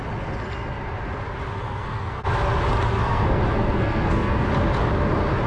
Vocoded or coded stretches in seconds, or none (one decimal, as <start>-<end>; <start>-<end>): 1.6-2.2; 2.9-4.5